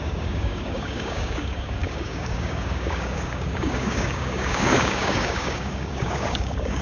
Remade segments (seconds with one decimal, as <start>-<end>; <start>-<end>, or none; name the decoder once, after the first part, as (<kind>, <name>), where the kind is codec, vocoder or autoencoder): 0.0-6.8 (codec, DAC)